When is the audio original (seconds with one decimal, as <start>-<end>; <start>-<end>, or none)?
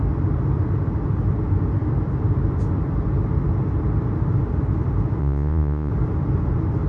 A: 0.0-5.2; 5.9-6.9